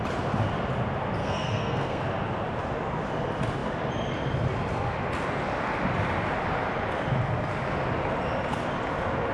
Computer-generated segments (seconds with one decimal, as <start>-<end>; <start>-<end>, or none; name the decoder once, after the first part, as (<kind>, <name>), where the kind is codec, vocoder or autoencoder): 1.2-2.0 (codec, SNAC)